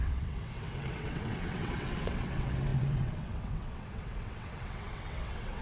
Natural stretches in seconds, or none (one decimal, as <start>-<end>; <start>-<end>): none